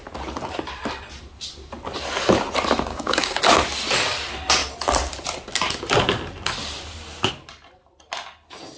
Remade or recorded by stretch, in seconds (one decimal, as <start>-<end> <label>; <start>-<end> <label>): 0.0-2.9 recorded; 2.9-3.4 remade; 3.4-8.8 recorded